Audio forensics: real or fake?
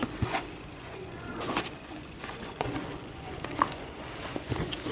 fake